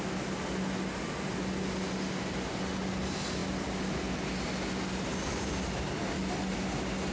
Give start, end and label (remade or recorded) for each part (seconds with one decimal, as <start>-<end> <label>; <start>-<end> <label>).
0.0-7.1 recorded